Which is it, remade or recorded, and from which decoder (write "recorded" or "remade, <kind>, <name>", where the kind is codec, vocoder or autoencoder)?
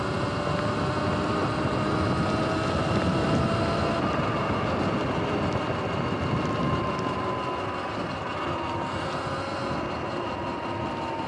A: recorded